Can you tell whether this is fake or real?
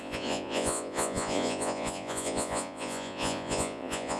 fake